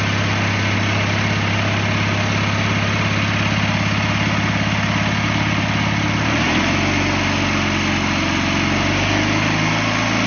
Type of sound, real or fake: real